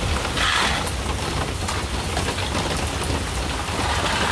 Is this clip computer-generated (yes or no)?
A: no